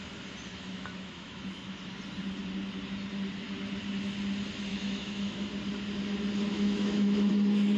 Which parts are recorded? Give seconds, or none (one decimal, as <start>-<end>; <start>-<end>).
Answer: 0.0-0.5; 1.9-4.7; 5.5-6.5; 7.3-7.8